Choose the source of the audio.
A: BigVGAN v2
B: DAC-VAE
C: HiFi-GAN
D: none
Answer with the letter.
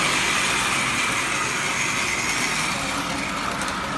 D